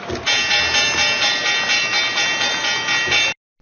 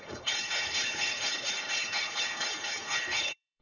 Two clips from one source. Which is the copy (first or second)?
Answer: second